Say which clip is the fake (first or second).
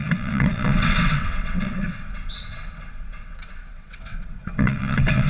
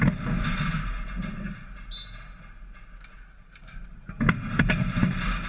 first